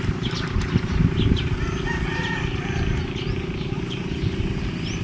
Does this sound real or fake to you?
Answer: real